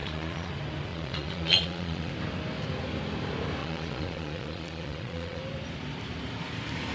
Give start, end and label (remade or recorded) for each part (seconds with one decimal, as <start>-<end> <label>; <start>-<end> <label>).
0.0-0.5 remade; 0.5-0.9 recorded; 0.9-2.1 remade; 2.1-3.6 recorded; 3.6-5.4 remade; 5.4-6.9 recorded